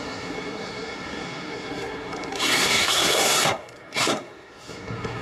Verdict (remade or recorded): remade